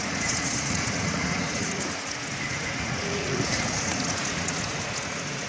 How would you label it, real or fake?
fake